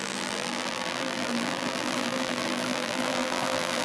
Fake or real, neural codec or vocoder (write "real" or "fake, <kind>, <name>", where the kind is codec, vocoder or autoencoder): fake, vocoder, BigVGAN v2